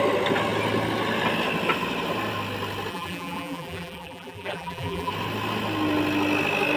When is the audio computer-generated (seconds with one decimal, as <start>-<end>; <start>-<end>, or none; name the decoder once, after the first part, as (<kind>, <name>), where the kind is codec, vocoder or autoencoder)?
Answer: 2.9-5.1 (vocoder, BigVGAN v2)